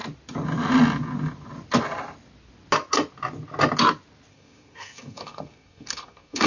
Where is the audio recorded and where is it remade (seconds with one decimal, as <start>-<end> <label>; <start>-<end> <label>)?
0.0-4.3 recorded; 4.3-6.5 remade